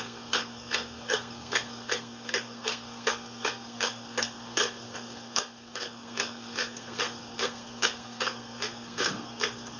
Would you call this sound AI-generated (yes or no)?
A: yes